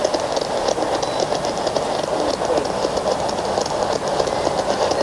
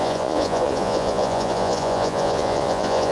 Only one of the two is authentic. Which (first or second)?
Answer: first